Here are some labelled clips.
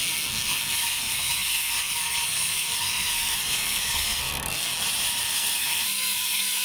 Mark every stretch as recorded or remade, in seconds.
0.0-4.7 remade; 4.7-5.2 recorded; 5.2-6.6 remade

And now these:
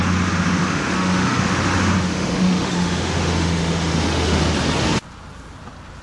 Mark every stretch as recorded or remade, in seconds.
0.0-0.6 recorded; 0.6-1.6 remade; 1.6-2.1 recorded; 2.1-4.4 remade; 4.4-6.0 recorded

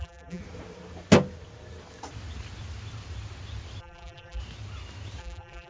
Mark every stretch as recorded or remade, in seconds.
0.0-0.4 remade; 0.4-3.8 recorded; 3.8-4.4 remade; 4.4-5.2 recorded; 5.2-5.7 remade